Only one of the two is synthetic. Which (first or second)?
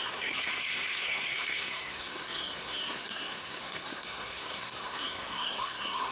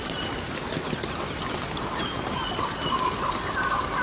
first